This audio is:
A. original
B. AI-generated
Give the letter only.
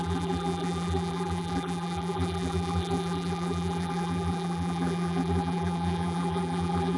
B